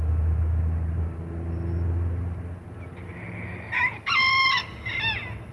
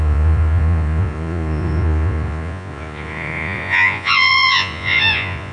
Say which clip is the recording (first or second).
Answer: first